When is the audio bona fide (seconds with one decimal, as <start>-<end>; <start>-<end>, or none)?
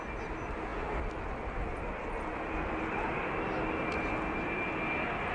0.0-5.3